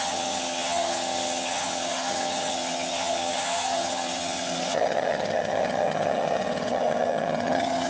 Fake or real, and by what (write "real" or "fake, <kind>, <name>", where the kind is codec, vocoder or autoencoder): fake, vocoder, HiFi-GAN